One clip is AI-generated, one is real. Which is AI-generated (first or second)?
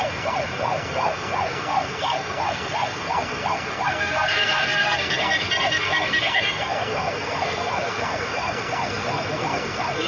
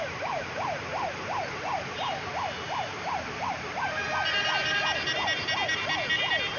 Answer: first